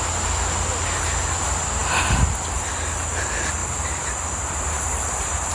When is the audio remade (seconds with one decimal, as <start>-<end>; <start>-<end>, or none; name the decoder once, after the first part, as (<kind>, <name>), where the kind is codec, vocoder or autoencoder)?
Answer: 3.6-5.5 (vocoder, BigVGAN v2)